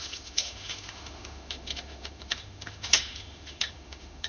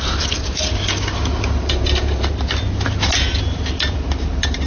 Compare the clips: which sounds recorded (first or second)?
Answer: second